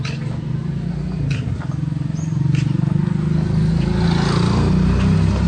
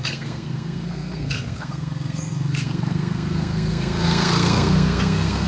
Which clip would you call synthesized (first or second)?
second